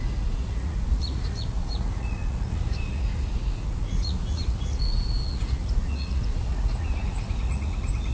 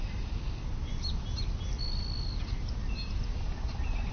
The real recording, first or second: second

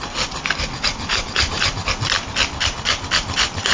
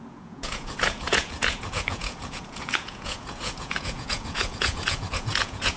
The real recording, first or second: first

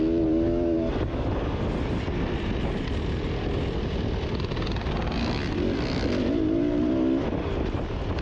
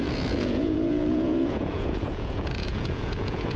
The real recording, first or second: first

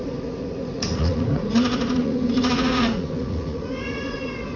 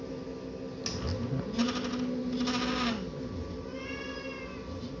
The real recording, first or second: second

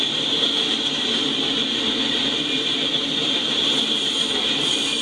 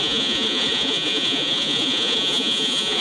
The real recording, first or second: first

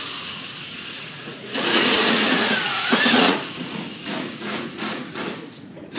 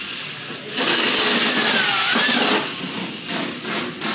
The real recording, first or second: second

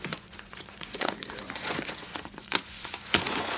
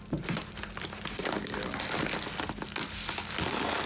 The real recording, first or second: second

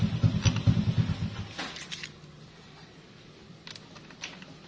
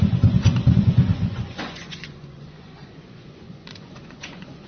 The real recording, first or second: first